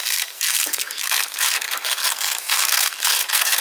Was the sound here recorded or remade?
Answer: remade